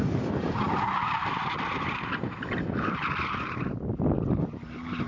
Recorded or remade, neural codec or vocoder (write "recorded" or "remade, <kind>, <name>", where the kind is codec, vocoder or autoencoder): recorded